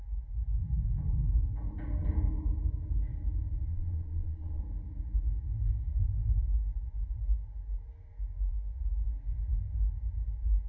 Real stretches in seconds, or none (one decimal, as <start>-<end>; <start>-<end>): 0.0-3.7; 4.6-10.7